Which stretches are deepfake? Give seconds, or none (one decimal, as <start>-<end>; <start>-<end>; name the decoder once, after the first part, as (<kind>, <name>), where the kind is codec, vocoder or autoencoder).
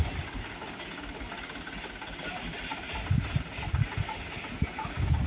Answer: none